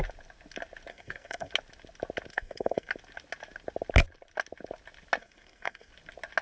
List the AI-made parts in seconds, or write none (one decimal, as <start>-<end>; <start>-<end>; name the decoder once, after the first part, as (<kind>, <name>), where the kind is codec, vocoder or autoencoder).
0.9-1.5 (codec, SNAC); 2.3-2.9; 5.2-5.9